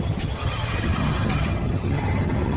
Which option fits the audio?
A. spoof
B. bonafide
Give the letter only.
A